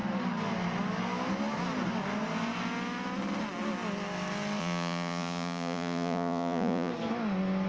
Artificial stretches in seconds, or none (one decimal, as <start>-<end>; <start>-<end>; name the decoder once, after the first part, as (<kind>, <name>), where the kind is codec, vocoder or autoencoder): 4.6-6.9 (vocoder, Vocos)